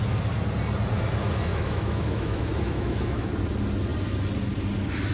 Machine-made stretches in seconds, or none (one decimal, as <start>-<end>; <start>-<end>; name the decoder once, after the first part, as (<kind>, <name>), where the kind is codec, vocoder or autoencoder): 1.5-3.3 (autoencoder, DAC-VAE)

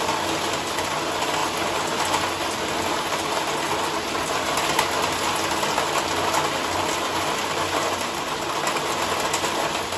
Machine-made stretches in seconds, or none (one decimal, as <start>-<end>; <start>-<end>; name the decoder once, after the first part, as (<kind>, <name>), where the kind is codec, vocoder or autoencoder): none

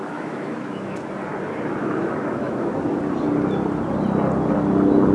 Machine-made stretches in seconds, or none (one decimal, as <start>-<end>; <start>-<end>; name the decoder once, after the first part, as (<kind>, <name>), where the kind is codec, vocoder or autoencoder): 0.0-1.1 (autoencoder, DAC-VAE); 1.8-2.7

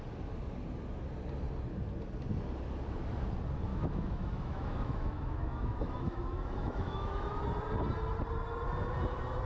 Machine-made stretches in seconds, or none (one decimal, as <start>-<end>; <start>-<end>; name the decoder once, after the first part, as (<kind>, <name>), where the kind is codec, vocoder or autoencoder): 3.7-7.4 (autoencoder, DAC-VAE)